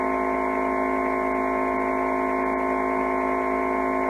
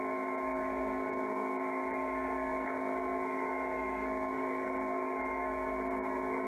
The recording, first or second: first